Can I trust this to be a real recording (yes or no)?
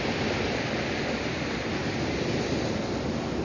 yes